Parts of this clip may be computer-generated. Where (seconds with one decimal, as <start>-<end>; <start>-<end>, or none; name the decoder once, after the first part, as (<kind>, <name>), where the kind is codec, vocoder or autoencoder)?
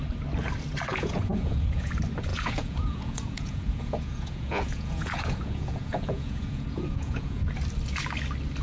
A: 0.9-1.9 (vocoder, Vocos); 2.3-7.4